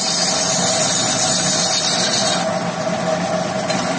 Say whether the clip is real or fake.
real